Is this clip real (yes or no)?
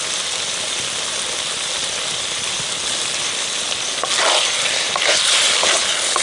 yes